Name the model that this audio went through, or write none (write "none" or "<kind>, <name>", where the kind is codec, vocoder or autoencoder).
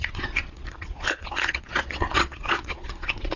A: vocoder, Vocos